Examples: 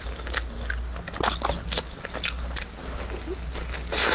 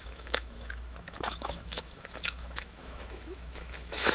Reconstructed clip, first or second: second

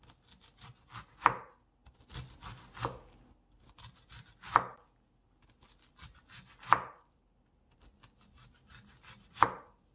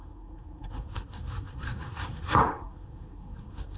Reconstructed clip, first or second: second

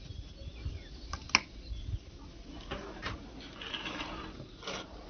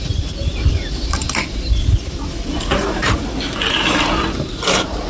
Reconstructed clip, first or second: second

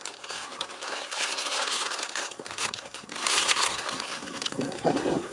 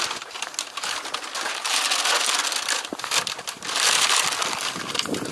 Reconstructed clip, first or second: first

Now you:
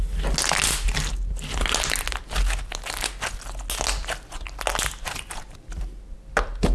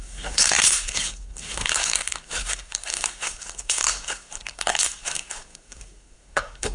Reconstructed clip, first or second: second